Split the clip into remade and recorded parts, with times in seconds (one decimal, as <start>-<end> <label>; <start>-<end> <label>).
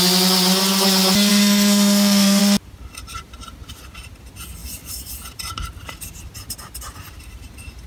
0.0-1.3 recorded; 1.3-2.4 remade; 2.4-7.9 recorded